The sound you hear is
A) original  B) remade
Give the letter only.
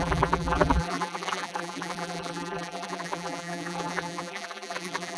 B